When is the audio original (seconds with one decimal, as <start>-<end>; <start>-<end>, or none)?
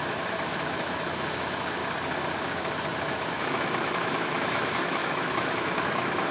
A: 1.8-3.0